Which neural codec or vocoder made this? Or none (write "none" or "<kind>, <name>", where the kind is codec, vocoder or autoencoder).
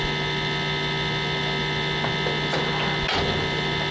none